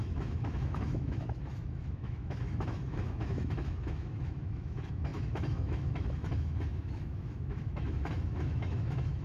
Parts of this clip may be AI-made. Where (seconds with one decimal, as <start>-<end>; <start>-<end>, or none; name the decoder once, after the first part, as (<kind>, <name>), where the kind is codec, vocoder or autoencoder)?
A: 0.0-9.2 (autoencoder, DAC-VAE)